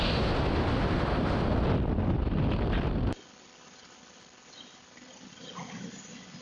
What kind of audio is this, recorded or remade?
recorded